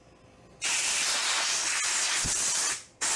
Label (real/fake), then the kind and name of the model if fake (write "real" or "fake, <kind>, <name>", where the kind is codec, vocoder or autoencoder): real